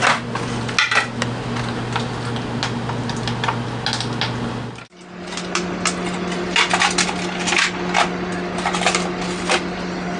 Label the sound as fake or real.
real